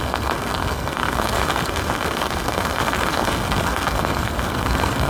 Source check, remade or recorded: remade